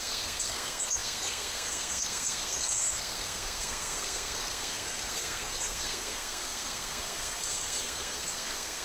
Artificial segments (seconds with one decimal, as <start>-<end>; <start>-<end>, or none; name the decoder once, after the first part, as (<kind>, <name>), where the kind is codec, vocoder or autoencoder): 0.0-8.8 (codec, SNAC)